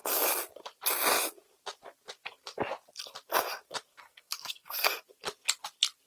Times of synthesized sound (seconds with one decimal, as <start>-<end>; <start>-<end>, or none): 3.9-4.9